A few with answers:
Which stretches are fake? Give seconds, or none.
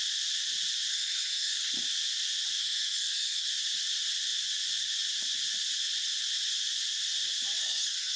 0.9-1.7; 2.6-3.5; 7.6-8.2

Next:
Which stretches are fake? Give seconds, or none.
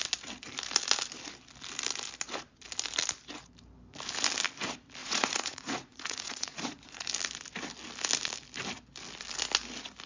5.0-7.1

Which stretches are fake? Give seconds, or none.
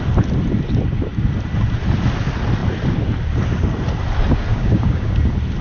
4.5-5.1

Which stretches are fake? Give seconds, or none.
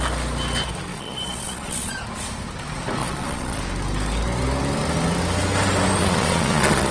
0.9-1.9; 3.0-3.6; 6.0-6.9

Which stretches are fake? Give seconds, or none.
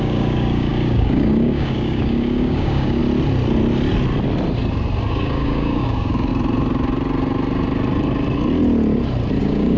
0.0-3.0; 5.1-6.3; 9.4-9.8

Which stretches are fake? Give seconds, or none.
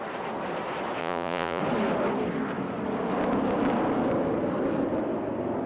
1.0-1.6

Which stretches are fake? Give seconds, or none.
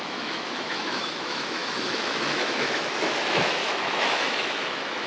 0.0-5.1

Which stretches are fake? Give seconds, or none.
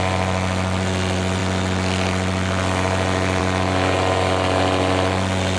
none